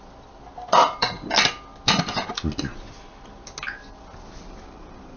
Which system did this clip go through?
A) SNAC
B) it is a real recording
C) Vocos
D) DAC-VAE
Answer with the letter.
B